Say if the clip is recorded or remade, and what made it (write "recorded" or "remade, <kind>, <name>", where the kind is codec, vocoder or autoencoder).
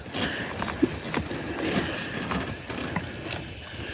recorded